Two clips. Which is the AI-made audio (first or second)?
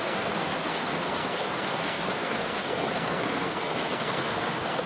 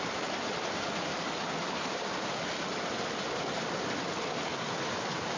first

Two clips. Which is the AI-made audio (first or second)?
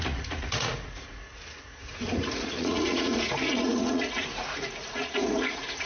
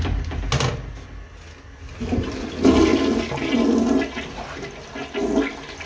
first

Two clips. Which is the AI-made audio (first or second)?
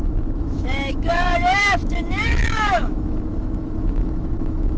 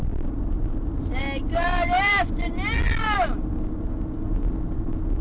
first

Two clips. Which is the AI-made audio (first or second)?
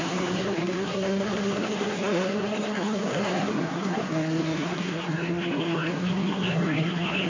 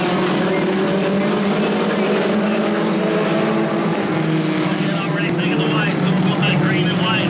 first